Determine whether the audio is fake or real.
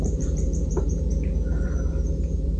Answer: fake